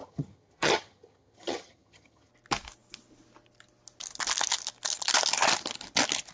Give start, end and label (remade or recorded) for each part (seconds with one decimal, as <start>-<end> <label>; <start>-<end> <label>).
0.0-2.3 remade; 2.3-6.3 recorded